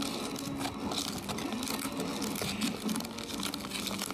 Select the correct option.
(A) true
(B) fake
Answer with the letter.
A